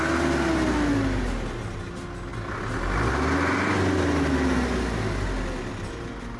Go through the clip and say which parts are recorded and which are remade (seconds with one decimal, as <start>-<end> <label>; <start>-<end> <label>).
0.0-6.4 recorded